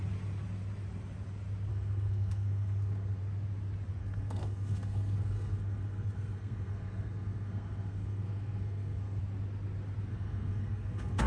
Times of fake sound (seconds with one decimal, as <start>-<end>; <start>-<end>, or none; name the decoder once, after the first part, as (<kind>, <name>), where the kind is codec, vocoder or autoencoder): 1.7-3.2 (codec, SNAC); 4.0-9.2; 10.1-11.3